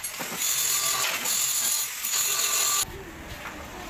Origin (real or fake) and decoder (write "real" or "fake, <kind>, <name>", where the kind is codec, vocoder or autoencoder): real